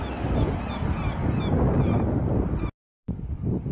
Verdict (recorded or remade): recorded